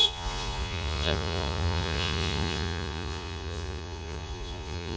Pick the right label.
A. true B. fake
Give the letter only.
B